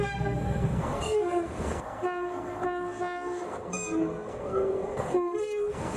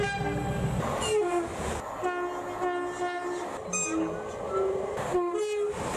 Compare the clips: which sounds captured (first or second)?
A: second